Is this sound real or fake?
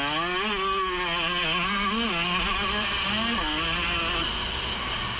real